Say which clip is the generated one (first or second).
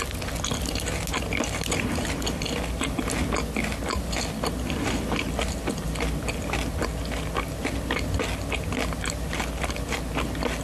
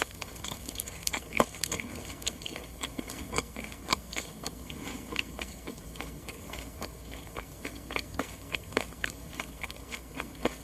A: second